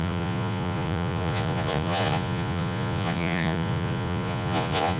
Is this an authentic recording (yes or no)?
no